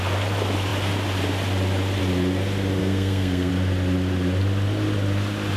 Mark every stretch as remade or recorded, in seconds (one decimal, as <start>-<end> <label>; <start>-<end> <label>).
0.0-2.8 recorded; 2.8-3.5 remade; 3.5-5.6 recorded